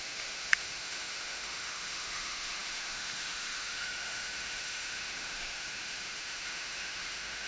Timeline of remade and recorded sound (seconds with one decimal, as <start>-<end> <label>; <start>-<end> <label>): 0.0-7.5 remade